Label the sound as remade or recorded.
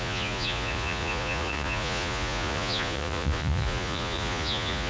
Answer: remade